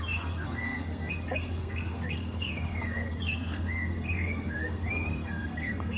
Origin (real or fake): fake